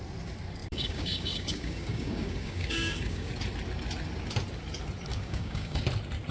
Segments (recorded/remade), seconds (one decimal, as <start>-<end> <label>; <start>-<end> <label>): 0.0-0.6 recorded; 0.6-3.3 remade; 3.3-5.1 recorded; 5.1-5.8 remade; 5.8-6.3 recorded